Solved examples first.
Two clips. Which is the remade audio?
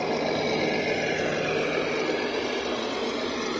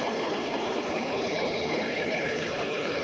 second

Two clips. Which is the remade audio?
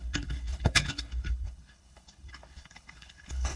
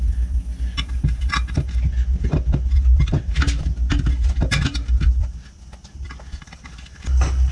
first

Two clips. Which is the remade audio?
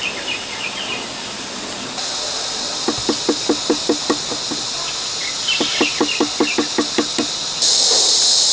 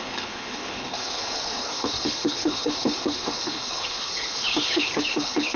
second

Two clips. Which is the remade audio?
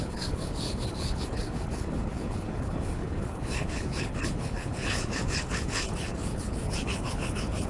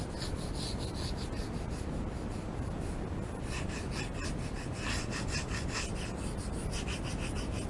first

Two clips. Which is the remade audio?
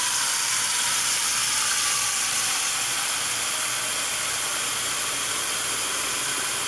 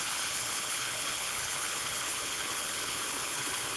second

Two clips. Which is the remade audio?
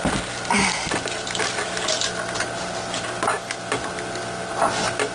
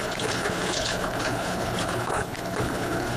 second